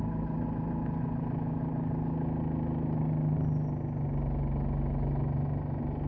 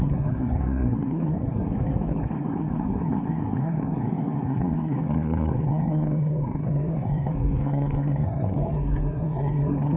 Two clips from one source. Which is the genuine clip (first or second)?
first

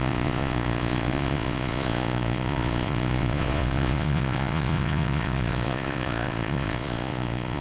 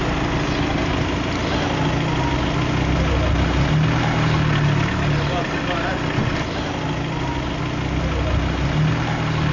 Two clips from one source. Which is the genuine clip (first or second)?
second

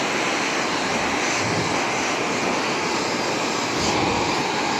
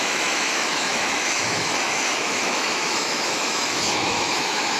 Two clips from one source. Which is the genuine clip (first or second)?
first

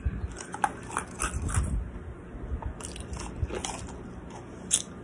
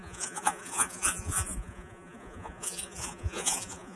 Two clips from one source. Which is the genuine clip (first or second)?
first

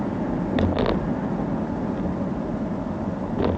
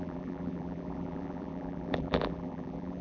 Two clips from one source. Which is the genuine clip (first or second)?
first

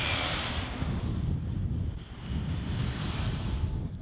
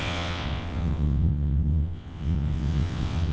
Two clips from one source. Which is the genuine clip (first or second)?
first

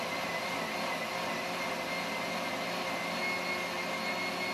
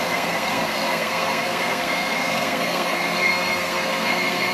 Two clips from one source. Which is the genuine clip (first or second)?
first